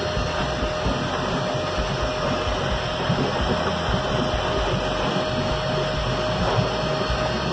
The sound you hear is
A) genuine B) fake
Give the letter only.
A